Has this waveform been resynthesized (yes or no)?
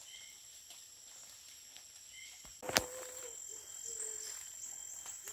no